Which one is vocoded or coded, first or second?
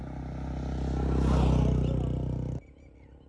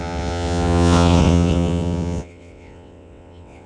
second